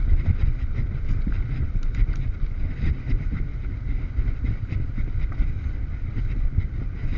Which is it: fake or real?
real